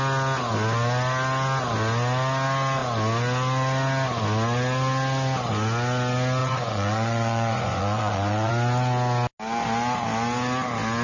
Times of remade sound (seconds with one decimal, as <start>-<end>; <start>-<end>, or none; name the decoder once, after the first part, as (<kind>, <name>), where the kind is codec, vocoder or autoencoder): 6.4-8.5 (vocoder, Vocos)